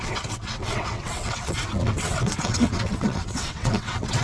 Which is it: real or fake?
fake